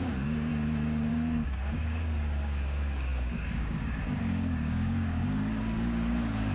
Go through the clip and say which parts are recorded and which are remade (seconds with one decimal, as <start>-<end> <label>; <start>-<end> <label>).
0.0-0.5 remade; 0.5-1.1 recorded; 1.1-6.5 remade